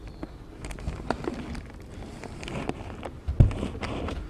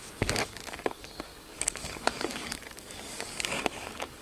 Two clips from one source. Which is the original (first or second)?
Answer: first